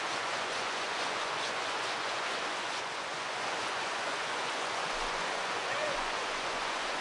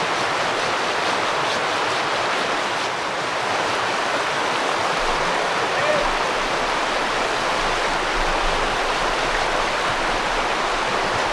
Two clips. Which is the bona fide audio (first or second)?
second